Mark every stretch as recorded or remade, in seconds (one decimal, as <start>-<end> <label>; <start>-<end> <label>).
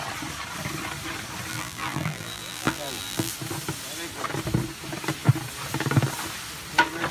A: 0.0-1.5 recorded; 1.5-3.3 remade; 3.3-7.1 recorded